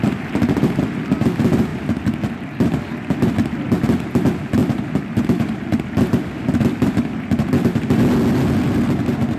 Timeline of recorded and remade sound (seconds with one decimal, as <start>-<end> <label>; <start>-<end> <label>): 0.0-9.4 recorded